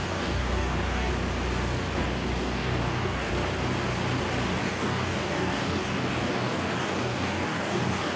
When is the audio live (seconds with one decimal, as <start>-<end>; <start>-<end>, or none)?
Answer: 1.1-2.0; 3.3-4.6